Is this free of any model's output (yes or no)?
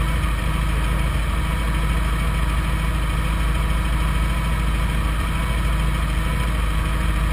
yes